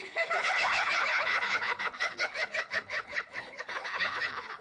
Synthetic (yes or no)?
yes